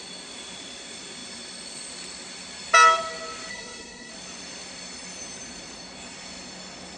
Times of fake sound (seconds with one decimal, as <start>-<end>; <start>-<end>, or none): 3.5-4.1